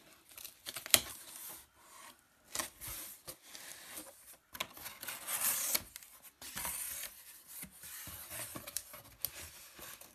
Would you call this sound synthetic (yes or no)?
no